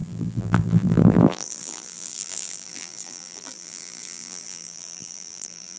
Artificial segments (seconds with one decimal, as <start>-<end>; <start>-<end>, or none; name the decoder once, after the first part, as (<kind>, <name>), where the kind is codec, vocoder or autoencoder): 0.0-5.8 (vocoder, BigVGAN v2)